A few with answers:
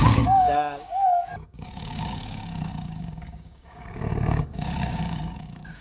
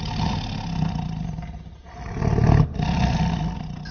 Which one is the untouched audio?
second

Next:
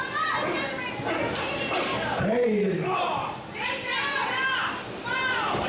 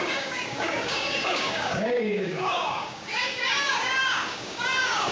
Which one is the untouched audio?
first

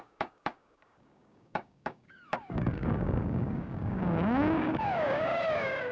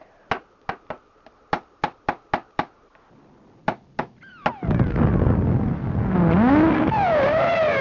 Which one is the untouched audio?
second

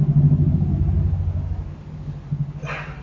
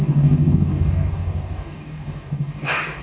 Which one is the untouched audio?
first